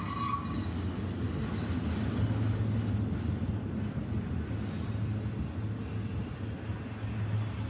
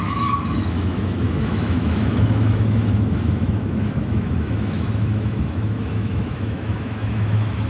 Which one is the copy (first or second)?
second